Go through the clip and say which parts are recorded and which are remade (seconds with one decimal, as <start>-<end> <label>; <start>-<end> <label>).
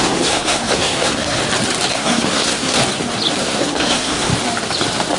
0.0-1.4 remade; 1.4-1.9 recorded; 1.9-2.8 remade; 2.8-3.4 recorded; 3.4-4.3 remade; 4.3-5.2 recorded